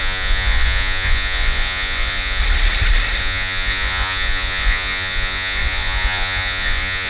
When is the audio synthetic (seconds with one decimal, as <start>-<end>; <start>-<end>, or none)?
0.0-2.4; 3.2-7.1